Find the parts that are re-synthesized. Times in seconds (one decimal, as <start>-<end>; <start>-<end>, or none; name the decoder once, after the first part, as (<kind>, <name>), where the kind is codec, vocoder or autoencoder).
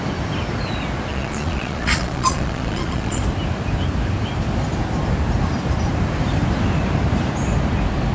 1.1-3.2 (vocoder, Vocos)